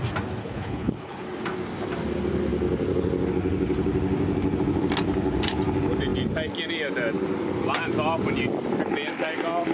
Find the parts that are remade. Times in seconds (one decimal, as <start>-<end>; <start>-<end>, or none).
0.4-1.2